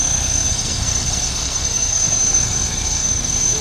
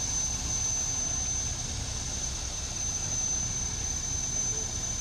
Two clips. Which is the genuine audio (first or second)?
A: second